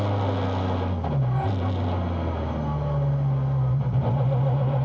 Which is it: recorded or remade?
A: recorded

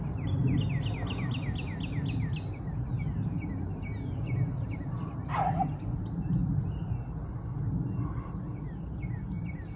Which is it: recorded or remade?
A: recorded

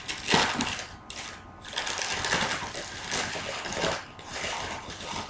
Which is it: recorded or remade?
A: recorded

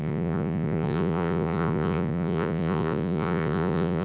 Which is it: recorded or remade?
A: remade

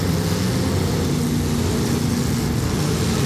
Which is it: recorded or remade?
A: recorded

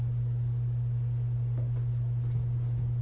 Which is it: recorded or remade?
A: recorded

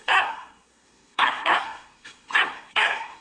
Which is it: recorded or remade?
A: remade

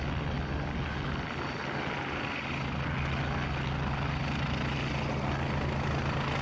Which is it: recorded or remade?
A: recorded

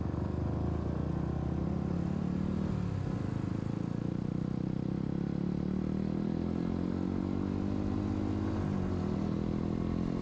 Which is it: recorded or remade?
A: recorded